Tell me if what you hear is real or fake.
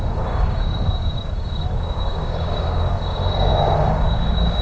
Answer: fake